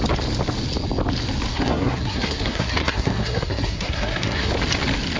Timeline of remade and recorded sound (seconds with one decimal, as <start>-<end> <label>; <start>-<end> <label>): 0.0-1.5 recorded; 1.5-4.5 remade; 4.5-5.2 recorded